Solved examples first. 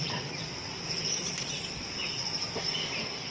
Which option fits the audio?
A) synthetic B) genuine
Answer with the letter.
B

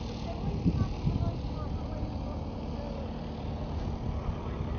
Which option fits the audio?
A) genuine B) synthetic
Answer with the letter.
A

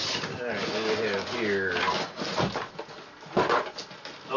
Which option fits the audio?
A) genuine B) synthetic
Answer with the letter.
A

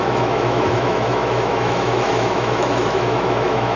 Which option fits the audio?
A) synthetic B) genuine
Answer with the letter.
A